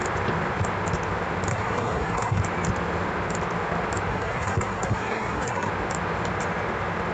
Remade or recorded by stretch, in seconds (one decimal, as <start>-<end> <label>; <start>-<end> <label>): 0.0-1.5 recorded; 1.5-2.4 remade; 2.4-4.1 recorded; 4.1-5.7 remade; 5.7-7.1 recorded